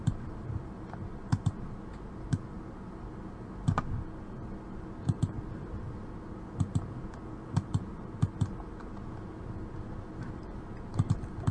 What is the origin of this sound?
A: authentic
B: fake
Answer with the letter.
A